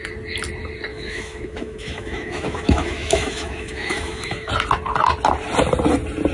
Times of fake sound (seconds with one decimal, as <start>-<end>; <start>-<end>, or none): 0.9-4.5